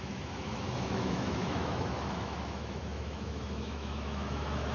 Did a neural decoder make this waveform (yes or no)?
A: yes